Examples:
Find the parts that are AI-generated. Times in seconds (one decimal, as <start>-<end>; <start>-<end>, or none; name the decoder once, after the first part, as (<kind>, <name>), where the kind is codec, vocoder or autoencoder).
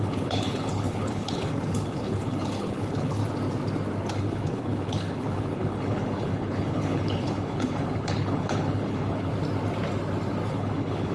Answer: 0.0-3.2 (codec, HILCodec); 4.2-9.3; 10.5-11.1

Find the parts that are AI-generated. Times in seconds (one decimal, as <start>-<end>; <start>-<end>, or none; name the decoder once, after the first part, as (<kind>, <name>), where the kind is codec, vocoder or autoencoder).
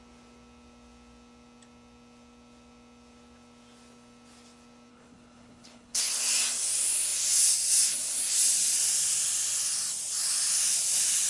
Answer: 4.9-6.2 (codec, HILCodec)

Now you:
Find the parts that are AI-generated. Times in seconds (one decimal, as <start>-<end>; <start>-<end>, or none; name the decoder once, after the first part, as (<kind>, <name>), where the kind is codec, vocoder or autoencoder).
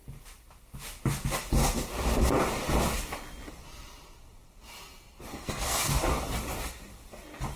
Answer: 5.3-5.9 (codec, SNAC)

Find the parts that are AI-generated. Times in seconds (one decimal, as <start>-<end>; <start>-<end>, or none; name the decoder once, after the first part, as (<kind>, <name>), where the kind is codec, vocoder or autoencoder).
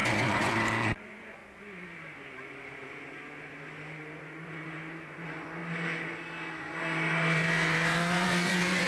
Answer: 0.0-1.4 (vocoder, Vocos); 4.2-5.6; 6.6-8.9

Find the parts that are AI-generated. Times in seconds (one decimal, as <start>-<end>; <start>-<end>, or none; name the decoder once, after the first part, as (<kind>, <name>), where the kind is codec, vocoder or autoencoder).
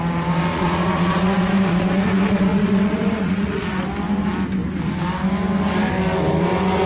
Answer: 0.5-3.6 (vocoder, Vocos)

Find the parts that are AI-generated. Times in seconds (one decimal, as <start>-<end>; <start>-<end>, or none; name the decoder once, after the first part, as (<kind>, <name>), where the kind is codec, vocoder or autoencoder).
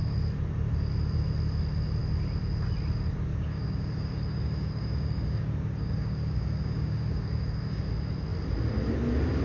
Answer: 3.3-7.8 (codec, DAC)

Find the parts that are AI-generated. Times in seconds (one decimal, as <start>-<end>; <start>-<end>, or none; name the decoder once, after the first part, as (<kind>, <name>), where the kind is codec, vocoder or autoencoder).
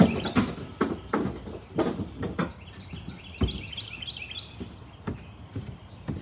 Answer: none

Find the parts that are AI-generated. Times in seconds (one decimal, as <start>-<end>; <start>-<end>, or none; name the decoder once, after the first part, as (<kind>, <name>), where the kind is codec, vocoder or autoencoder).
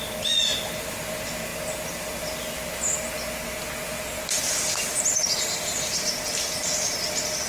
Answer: none